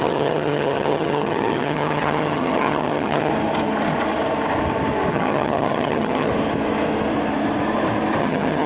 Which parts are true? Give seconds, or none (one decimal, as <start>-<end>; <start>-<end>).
3.3-5.1; 6.3-8.2